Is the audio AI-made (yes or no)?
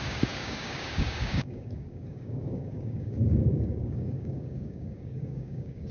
yes